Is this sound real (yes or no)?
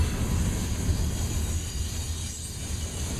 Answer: yes